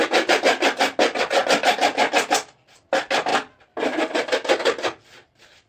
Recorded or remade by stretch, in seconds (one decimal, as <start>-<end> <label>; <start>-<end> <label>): 0.0-5.7 recorded